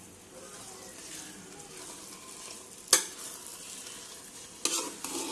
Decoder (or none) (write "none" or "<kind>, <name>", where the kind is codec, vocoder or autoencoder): none